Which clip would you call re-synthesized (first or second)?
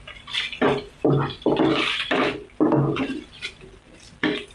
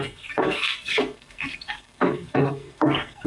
second